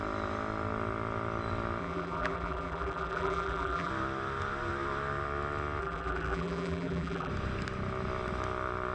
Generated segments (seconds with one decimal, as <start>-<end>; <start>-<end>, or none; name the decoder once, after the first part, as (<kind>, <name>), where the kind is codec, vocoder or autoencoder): 1.8-3.9 (vocoder, BigVGAN v2); 5.8-7.3